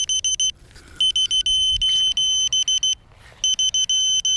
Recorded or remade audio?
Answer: recorded